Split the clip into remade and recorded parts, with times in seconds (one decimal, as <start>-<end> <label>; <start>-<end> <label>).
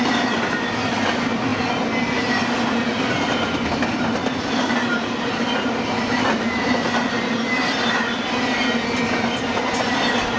0.0-1.5 remade; 1.5-2.2 recorded; 2.2-10.4 remade